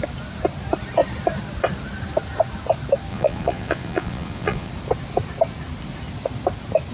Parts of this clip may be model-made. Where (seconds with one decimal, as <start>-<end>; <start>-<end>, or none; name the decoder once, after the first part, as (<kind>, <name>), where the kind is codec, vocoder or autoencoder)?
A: 3.1-4.7 (vocoder, Vocos)